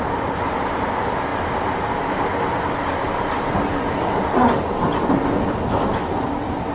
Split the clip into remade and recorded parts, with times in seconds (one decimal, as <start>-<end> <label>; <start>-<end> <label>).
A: 0.0-1.3 remade; 1.3-5.1 recorded; 5.1-6.7 remade